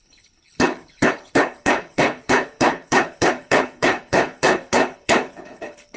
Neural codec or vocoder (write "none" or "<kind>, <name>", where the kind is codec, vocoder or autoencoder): codec, HILCodec